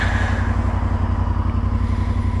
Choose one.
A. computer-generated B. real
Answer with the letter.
B